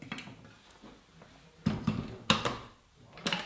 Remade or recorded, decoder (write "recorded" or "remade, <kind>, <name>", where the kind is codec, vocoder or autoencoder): recorded